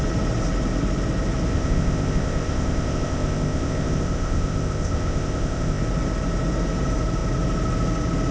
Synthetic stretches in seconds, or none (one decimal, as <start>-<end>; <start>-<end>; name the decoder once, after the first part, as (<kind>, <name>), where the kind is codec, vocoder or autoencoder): 1.5-5.8 (codec, ZipCodec)